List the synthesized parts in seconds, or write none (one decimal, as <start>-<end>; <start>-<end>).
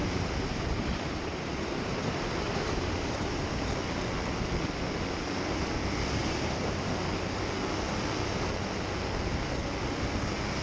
0.0-3.7; 6.2-6.9